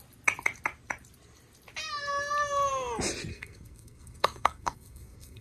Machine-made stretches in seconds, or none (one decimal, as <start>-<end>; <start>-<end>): 3.3-5.4